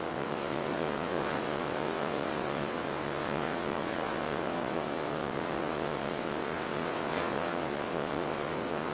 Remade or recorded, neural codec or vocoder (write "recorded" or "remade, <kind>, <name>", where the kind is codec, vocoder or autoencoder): remade, vocoder, WaveNeXt